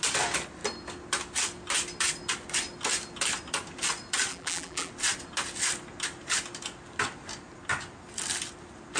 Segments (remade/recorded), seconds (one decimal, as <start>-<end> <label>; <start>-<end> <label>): 0.0-4.3 recorded; 4.3-4.9 remade; 4.9-9.0 recorded